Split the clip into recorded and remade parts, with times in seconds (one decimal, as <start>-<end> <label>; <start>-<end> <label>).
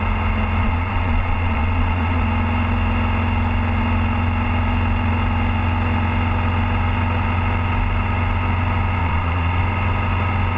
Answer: 0.0-0.6 recorded; 0.6-2.2 remade; 2.2-9.0 recorded; 9.0-9.6 remade; 9.6-10.6 recorded